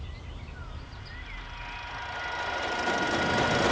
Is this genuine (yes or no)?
yes